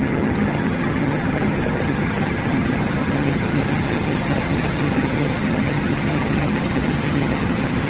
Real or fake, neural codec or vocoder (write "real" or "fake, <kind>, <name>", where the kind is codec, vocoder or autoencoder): fake, vocoder, HiFi-GAN